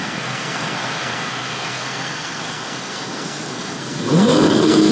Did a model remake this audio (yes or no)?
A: yes